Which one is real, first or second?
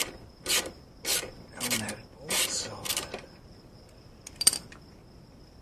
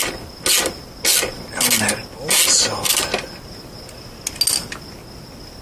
second